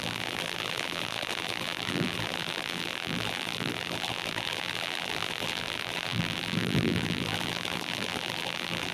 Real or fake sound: fake